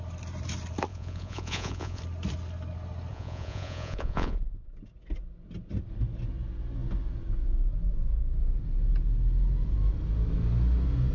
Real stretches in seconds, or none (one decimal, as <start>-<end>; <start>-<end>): 0.0-0.9; 2.0-3.1; 4.7-11.1